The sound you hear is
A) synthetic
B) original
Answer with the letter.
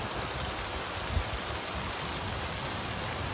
B